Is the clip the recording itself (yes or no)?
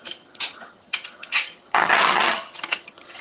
no